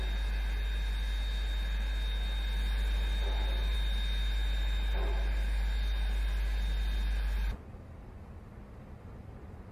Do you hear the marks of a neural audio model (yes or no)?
no